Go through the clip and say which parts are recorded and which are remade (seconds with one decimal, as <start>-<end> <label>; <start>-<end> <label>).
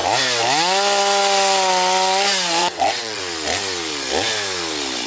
0.0-2.6 recorded; 2.6-3.2 remade; 3.2-5.1 recorded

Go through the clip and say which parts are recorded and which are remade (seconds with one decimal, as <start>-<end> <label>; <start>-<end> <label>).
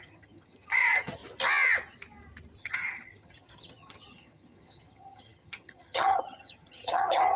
0.0-1.2 remade; 1.2-2.6 recorded; 2.6-7.4 remade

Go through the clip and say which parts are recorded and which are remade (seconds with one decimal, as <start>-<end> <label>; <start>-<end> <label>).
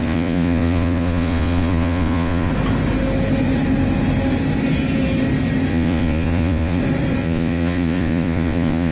0.0-2.5 remade; 2.5-5.7 recorded; 5.7-6.8 remade; 6.8-7.2 recorded; 7.2-8.9 remade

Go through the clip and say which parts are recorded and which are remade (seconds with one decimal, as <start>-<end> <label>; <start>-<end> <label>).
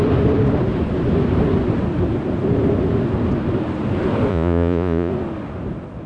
0.0-4.3 recorded; 4.3-5.1 remade; 5.1-6.1 recorded